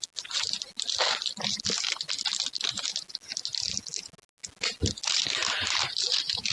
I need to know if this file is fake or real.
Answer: real